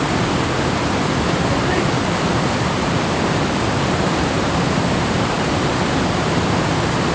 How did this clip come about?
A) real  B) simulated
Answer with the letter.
B